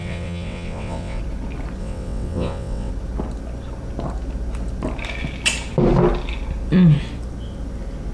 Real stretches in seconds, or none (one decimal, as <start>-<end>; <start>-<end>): 1.2-1.8; 2.9-8.1